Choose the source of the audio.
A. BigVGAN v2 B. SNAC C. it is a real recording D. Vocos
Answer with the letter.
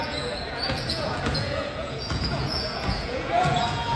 D